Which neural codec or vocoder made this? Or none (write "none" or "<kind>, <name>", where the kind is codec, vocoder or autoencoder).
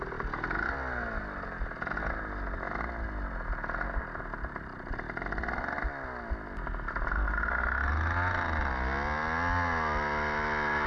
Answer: none